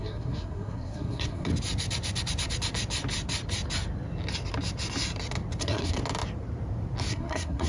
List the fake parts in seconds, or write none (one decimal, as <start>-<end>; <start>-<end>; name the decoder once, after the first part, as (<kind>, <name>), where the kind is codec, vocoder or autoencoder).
0.0-1.5 (codec, SNAC); 5.6-6.0; 7.1-7.7